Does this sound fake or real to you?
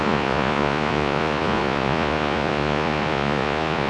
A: fake